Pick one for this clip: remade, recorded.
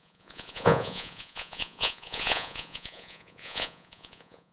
remade